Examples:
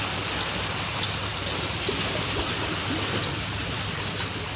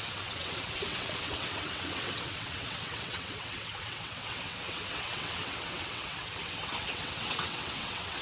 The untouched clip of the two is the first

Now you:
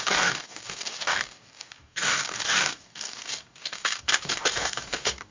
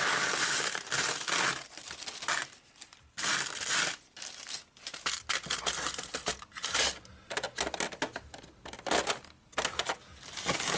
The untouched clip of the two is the second